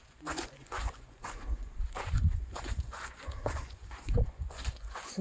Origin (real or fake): fake